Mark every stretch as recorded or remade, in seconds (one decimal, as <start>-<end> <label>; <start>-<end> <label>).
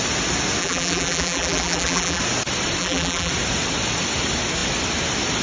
0.0-0.6 recorded; 0.6-2.2 remade; 2.2-2.8 recorded; 2.8-3.3 remade; 3.3-5.4 recorded